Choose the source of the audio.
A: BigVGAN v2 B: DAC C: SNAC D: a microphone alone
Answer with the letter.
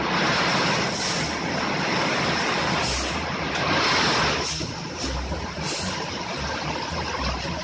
D